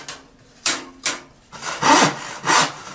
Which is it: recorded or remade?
recorded